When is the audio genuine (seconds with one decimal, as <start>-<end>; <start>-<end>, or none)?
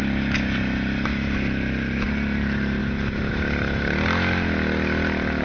0.0-5.4